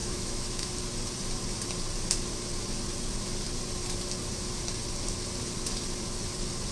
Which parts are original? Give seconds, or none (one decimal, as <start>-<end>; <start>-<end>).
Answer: 0.7-6.7